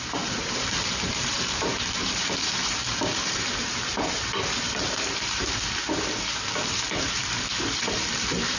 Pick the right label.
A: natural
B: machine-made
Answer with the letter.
B